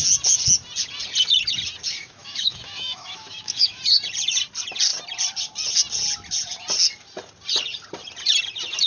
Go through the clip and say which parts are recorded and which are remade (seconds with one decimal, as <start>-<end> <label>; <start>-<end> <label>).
0.0-2.0 recorded; 2.0-3.8 remade; 3.8-8.9 recorded